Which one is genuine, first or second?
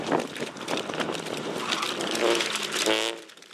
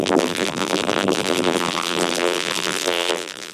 first